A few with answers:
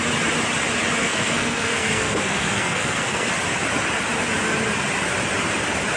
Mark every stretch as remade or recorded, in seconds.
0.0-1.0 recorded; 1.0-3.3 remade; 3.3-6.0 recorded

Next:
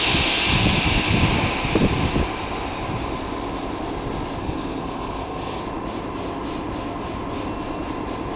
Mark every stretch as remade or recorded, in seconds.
0.0-4.4 recorded; 4.4-5.6 remade; 5.6-8.4 recorded

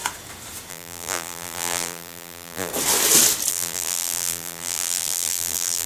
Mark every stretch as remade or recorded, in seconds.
0.0-0.7 recorded; 0.7-2.7 remade; 2.7-3.5 recorded; 3.5-5.9 remade

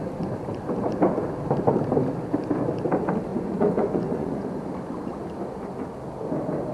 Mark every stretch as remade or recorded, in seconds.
0.0-3.3 recorded; 3.3-4.6 remade; 4.6-6.7 recorded

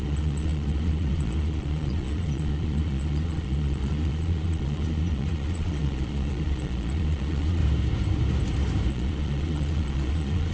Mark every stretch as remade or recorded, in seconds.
0.0-7.6 remade; 7.6-8.9 recorded; 8.9-10.5 remade

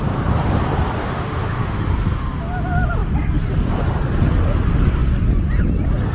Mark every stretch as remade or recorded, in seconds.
0.0-1.0 recorded; 1.0-1.8 remade; 1.8-6.1 recorded

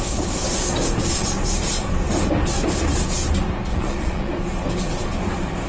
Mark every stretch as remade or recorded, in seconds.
0.0-3.7 recorded; 3.7-4.3 remade; 4.3-5.7 recorded